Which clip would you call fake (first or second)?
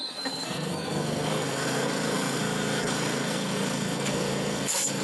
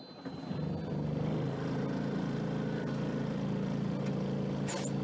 first